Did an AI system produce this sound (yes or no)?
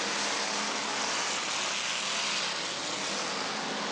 no